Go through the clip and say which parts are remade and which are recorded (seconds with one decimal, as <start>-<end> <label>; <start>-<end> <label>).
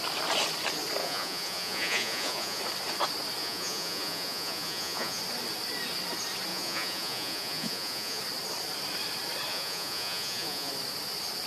0.0-1.0 recorded; 1.0-2.6 remade; 2.6-3.4 recorded; 3.4-5.2 remade; 5.2-6.5 recorded; 6.5-8.2 remade; 8.2-9.5 recorded; 9.5-10.7 remade; 10.7-11.5 recorded